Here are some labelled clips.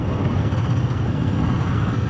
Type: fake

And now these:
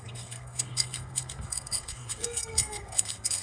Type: fake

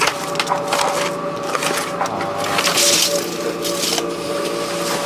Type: real